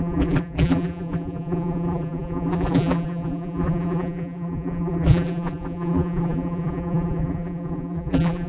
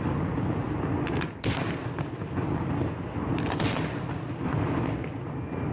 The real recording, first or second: second